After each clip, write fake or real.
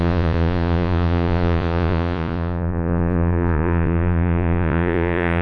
fake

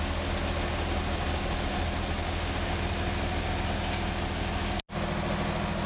real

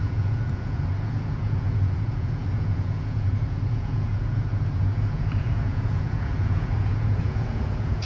fake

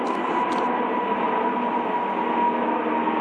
real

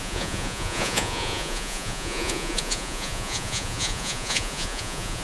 fake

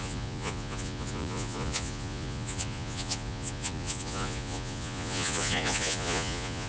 fake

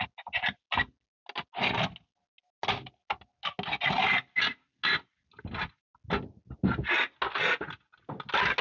real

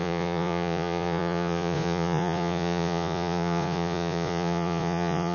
fake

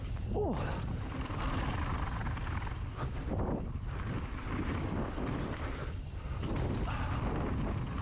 real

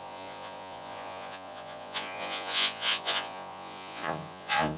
fake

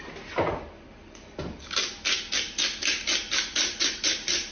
real